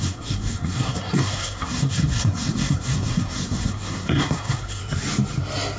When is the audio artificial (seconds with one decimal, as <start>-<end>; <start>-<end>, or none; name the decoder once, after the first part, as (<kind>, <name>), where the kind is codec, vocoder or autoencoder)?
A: 0.0-4.8 (codec, SNAC)

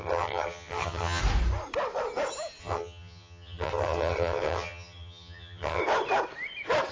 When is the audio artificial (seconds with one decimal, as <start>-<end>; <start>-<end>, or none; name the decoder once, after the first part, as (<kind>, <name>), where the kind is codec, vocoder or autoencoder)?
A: 0.0-1.2 (vocoder, HiFi-GAN); 2.6-5.8